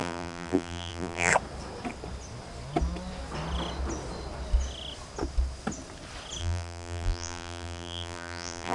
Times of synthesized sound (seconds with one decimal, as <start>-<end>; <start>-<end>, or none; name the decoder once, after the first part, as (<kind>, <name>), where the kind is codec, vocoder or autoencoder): 0.0-1.3 (vocoder, BigVGAN v2); 6.4-8.7